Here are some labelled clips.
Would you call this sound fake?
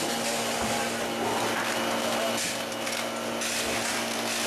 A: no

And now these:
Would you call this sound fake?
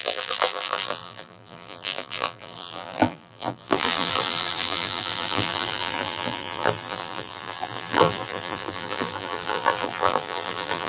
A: yes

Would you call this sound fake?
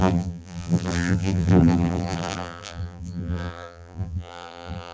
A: yes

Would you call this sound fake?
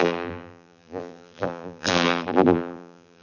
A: yes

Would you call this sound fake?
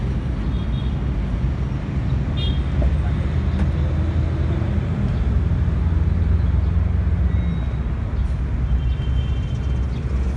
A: no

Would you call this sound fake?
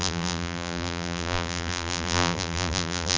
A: yes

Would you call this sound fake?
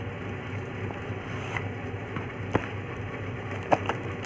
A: no